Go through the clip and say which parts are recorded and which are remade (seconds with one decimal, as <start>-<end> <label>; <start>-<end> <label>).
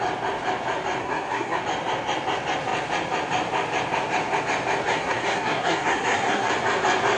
0.0-1.0 recorded; 1.0-1.6 remade; 1.6-4.9 recorded; 4.9-6.5 remade; 6.5-7.2 recorded